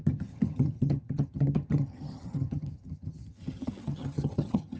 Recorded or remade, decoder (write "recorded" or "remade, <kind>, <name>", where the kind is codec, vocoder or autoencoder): remade, vocoder, HiFi-GAN